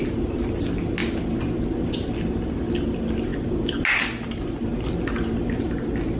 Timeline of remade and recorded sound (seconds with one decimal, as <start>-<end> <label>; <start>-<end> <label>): 0.0-6.2 recorded